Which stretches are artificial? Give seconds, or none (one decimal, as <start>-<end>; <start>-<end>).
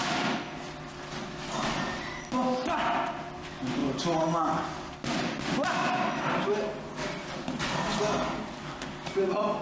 none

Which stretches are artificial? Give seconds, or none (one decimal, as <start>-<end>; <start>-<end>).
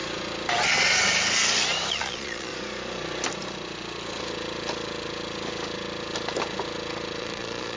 1.9-2.5; 7.2-7.8